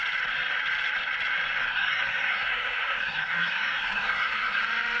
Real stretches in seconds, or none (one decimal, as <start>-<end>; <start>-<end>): 0.0-1.6; 4.6-5.0